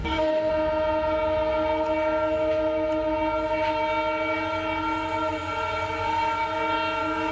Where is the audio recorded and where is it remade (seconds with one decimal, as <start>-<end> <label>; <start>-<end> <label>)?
0.0-0.5 remade; 0.5-7.3 recorded